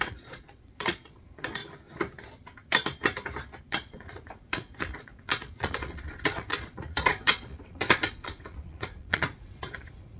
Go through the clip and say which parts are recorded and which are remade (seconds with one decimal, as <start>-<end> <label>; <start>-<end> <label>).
0.0-1.6 remade; 1.6-3.6 recorded; 3.6-10.2 remade